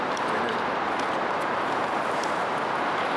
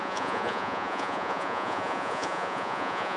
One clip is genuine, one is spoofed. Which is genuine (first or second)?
first